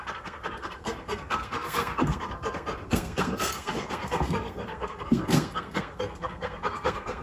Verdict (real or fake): fake